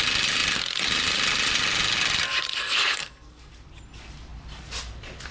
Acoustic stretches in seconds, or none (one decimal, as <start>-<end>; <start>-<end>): 0.0-2.6; 3.5-5.3